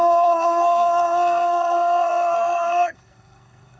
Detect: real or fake fake